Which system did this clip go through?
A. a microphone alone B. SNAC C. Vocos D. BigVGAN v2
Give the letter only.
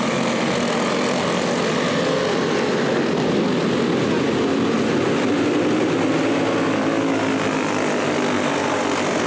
A